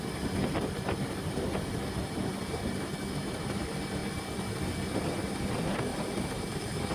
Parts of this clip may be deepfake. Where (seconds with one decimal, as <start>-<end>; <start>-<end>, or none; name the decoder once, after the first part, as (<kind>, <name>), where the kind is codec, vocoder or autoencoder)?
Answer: 4.0-4.6 (vocoder, BigVGAN v2); 5.9-6.9

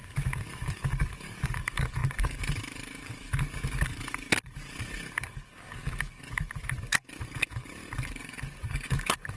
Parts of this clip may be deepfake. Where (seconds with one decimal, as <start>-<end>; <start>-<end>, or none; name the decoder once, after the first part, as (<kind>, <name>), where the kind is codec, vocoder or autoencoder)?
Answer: 0.0-9.4 (codec, DAC)

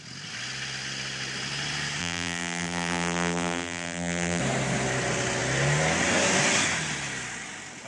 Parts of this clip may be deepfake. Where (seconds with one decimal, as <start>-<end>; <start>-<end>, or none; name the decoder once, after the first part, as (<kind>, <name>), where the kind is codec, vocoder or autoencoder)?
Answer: 2.0-4.4 (vocoder, BigVGAN v2)